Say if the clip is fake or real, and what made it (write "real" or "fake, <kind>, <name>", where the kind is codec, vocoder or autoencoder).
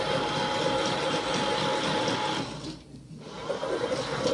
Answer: real